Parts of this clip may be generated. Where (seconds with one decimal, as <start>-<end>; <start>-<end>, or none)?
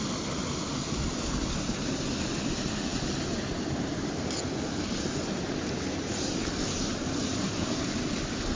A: none